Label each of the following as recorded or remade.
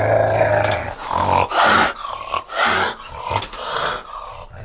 recorded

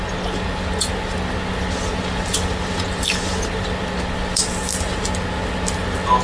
recorded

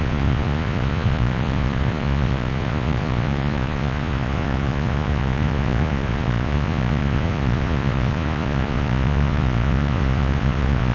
remade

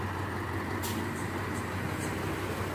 recorded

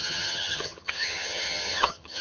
remade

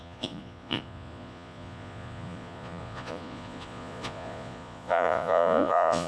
remade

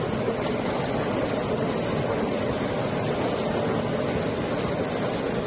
recorded